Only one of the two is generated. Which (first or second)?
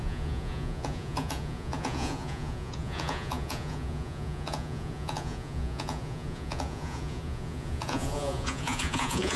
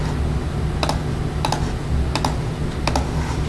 first